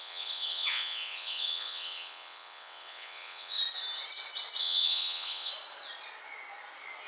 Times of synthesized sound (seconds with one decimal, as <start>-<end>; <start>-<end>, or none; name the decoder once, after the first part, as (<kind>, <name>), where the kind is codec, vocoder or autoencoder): 0.0-3.6 (vocoder, WaveNeXt); 4.6-5.5